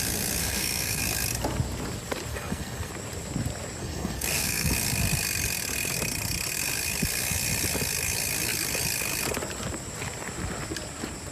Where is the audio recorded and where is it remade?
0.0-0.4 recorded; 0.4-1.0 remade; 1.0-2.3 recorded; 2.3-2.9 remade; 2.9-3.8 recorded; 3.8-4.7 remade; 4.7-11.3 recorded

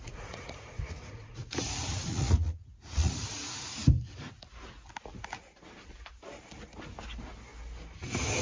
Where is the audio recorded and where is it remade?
0.0-3.4 remade; 3.4-8.4 recorded

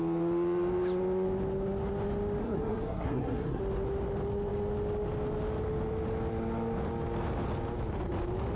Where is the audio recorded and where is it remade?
0.0-2.4 recorded; 2.4-3.6 remade; 3.6-8.6 recorded

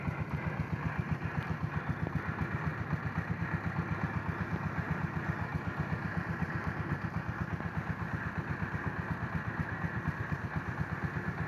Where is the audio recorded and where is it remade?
0.0-2.7 recorded; 2.7-3.4 remade; 3.4-5.5 recorded; 5.5-10.0 remade; 10.0-11.5 recorded

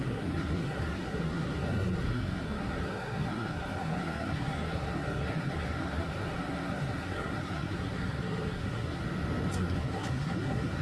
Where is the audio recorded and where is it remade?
0.0-9.0 remade; 9.0-9.5 recorded; 9.5-10.8 remade

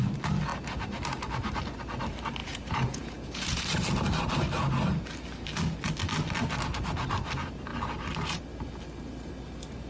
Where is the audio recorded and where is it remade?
0.0-2.4 recorded; 2.4-3.6 remade; 3.6-9.9 recorded

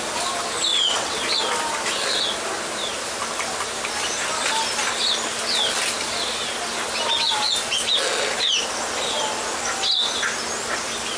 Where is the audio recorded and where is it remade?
0.0-0.7 recorded; 0.7-1.2 remade; 1.2-11.2 recorded

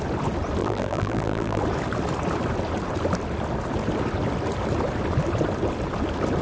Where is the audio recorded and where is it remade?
0.0-0.6 recorded; 0.6-1.6 remade; 1.6-6.4 recorded